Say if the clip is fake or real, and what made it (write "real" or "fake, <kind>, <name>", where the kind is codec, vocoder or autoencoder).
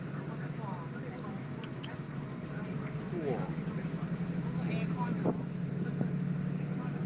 real